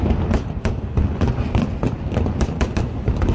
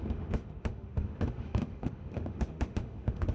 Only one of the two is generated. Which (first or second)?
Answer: second